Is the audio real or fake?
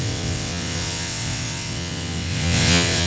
fake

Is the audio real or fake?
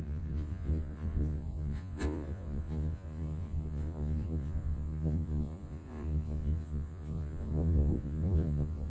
fake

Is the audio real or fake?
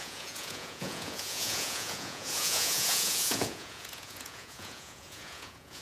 fake